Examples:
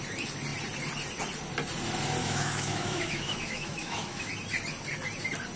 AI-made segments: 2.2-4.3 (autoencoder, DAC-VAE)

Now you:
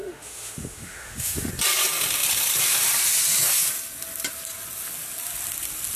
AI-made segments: 0.0-1.5 (autoencoder, DAC-VAE)

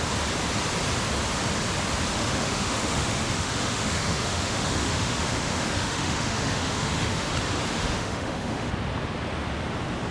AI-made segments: 2.1-7.3 (autoencoder, DAC-VAE); 7.8-8.7